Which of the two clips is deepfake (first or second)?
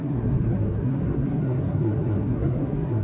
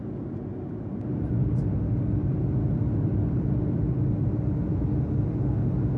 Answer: first